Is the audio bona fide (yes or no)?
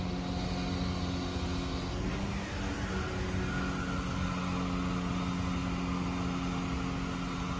yes